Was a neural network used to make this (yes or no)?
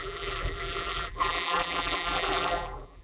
yes